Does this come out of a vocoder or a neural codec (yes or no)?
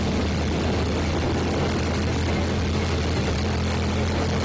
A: no